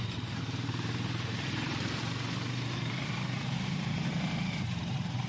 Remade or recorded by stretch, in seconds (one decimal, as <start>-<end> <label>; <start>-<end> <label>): 0.0-2.0 remade; 2.0-2.7 recorded; 2.7-5.3 remade